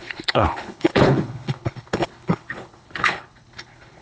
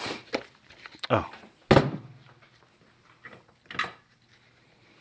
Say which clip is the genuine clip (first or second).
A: second